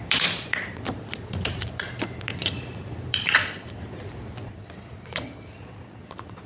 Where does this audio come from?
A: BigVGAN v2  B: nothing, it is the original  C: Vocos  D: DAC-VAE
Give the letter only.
C